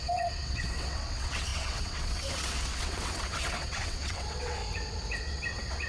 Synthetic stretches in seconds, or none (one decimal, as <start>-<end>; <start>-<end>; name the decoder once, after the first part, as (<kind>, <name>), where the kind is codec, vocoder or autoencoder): 0.0-4.6 (vocoder, WaveNeXt); 5.2-5.9